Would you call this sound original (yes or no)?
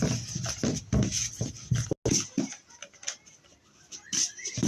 yes